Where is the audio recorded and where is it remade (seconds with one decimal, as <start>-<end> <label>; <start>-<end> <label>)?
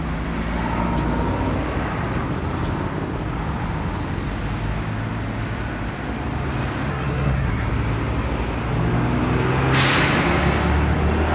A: 0.0-6.9 recorded; 6.9-7.7 remade; 7.7-11.3 recorded